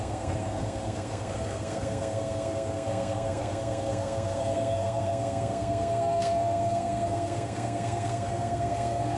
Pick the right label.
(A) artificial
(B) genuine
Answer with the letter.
A